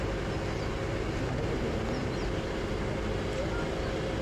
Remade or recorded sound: recorded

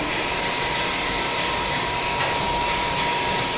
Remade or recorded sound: remade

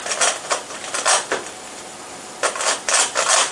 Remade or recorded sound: recorded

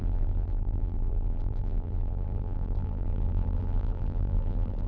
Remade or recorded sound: remade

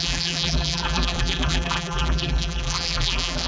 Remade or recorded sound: remade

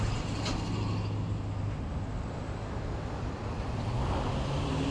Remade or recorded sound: recorded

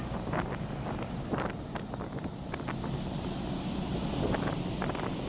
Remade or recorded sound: recorded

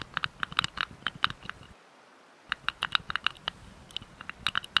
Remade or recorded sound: recorded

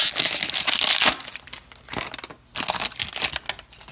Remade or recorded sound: recorded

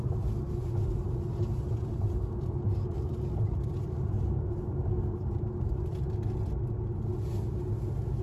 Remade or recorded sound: recorded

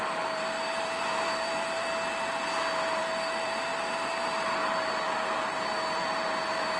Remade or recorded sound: remade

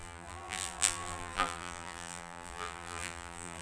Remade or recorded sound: remade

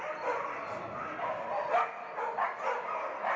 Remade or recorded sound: recorded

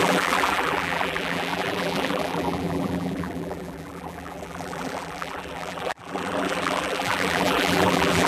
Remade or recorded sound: remade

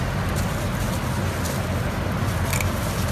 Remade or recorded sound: remade